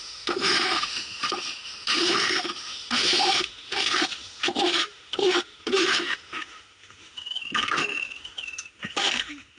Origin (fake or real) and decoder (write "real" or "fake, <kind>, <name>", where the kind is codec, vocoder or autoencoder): fake, autoencoder, DAC-VAE